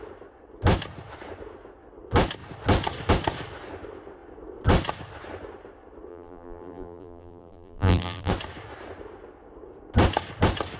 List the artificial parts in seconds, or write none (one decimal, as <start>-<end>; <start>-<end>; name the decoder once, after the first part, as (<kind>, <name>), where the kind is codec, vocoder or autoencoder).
6.1-8.3 (vocoder, BigVGAN v2)